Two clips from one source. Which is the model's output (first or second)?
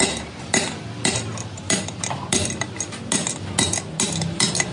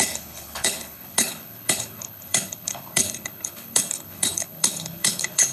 second